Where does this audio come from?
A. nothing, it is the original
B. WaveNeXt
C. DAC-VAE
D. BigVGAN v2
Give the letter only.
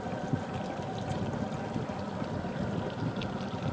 A